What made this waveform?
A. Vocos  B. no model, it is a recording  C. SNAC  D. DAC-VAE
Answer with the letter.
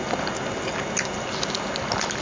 B